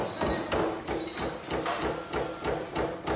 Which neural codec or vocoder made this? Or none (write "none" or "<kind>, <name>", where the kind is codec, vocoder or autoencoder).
none